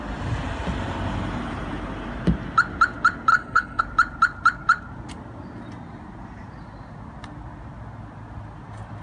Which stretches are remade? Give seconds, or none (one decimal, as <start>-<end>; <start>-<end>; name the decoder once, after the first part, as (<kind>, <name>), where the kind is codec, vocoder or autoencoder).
3.3-3.8 (codec, HILCodec)